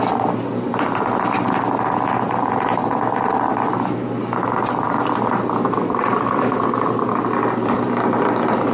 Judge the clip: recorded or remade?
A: remade